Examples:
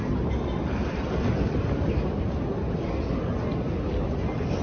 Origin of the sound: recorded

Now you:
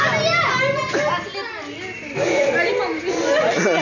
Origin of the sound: recorded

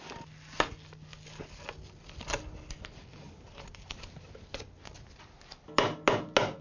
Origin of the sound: recorded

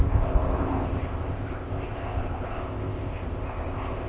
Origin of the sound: remade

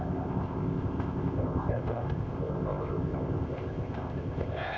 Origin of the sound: remade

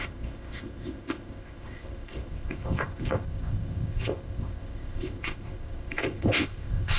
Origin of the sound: remade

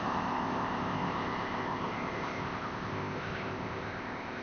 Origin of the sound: remade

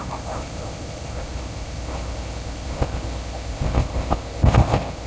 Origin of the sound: remade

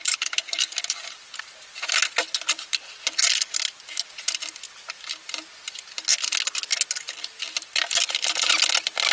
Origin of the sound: recorded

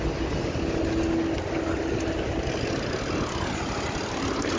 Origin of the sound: recorded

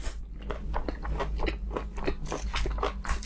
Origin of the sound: recorded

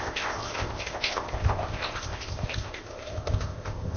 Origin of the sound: remade